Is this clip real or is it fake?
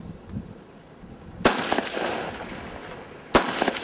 fake